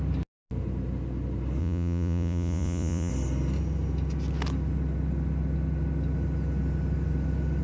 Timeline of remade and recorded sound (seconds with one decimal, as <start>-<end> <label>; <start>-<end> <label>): 0.0-1.6 recorded; 1.6-3.1 remade; 3.1-7.6 recorded